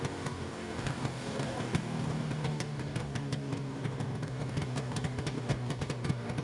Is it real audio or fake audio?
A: fake